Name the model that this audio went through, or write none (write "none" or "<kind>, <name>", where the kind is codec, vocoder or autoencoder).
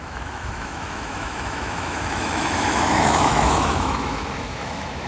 autoencoder, DAC-VAE